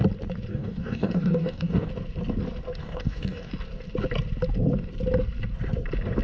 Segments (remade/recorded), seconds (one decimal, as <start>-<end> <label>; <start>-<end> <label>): 0.0-0.5 recorded; 0.5-1.9 remade; 1.9-2.8 recorded; 2.8-3.5 remade; 3.5-6.2 recorded